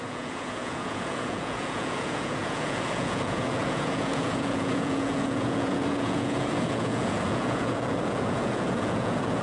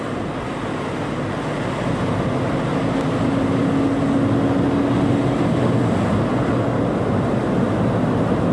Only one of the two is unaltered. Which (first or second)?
second